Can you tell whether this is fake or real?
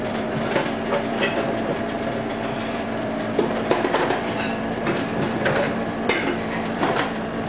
fake